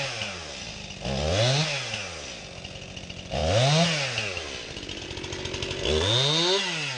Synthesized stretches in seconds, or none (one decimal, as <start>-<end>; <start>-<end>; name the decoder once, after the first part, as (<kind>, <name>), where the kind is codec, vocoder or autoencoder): none